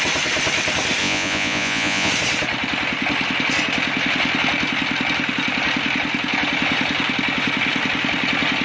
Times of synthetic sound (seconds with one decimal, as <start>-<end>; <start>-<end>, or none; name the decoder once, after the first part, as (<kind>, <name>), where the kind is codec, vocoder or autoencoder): 1.0-2.1 (vocoder, Vocos)